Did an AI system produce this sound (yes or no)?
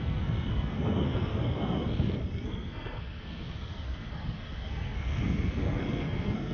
yes